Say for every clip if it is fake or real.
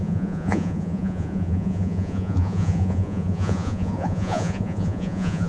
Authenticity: fake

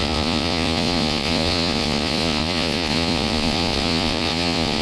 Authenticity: fake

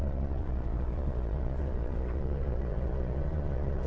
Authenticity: fake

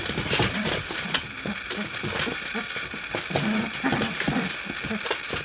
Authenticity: real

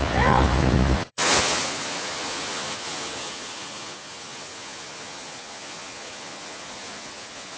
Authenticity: fake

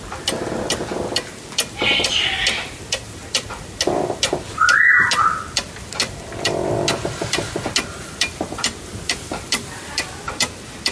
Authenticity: real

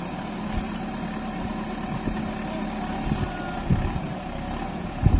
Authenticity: real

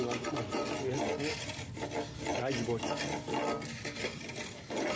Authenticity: real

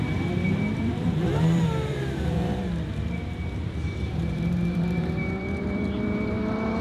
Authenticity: fake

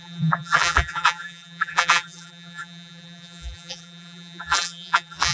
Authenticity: fake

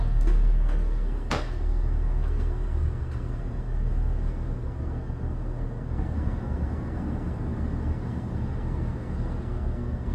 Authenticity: fake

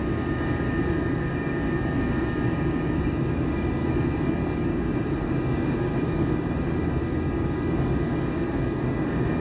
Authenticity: fake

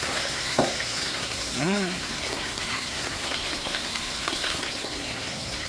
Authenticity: fake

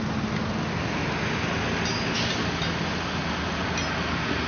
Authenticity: real